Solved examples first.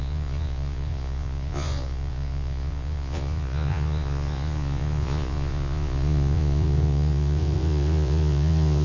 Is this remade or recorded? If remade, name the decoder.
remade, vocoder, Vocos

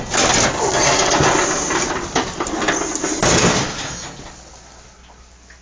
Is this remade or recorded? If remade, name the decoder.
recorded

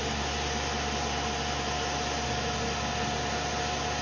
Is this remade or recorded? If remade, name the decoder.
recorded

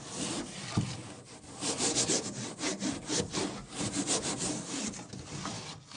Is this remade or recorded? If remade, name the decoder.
recorded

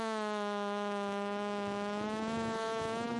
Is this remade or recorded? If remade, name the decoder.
remade, autoencoder, DAC-VAE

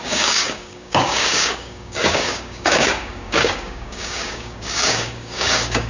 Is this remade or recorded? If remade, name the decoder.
remade, codec, DAC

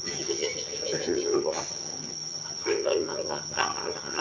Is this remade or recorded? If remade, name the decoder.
remade, vocoder, HiFi-GAN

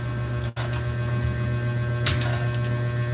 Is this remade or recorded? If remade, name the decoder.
recorded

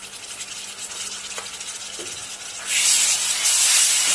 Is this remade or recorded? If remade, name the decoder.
recorded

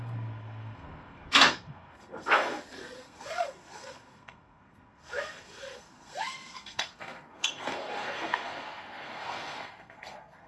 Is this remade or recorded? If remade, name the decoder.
remade, codec, SNAC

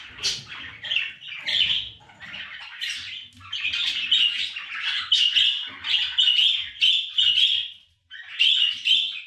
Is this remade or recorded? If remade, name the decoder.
recorded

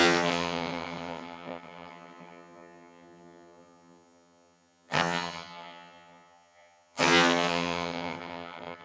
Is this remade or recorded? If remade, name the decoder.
remade, vocoder, HiFi-GAN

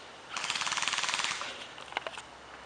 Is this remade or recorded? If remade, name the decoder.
recorded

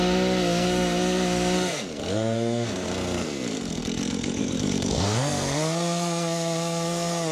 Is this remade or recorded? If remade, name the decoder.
remade, codec, SNAC